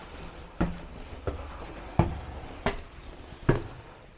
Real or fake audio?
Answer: real